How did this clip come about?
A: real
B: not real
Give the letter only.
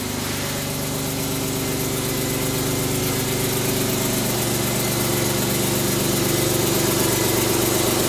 A